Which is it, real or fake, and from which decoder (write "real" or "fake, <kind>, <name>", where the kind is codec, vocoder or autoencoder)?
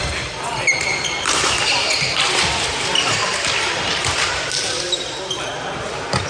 real